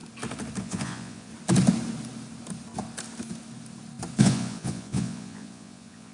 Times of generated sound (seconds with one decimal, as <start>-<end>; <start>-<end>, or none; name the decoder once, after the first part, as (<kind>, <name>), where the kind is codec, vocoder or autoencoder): 0.6-1.3 (vocoder, Vocos); 4.2-6.1